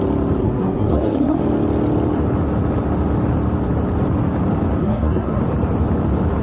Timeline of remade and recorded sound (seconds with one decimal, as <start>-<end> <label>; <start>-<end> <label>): 0.0-0.4 recorded; 0.4-1.4 remade; 1.4-4.8 recorded; 4.8-5.4 remade; 5.4-6.4 recorded